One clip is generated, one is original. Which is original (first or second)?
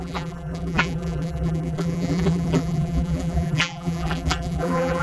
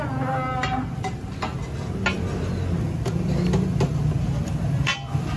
second